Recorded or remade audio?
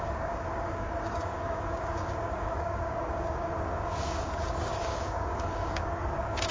remade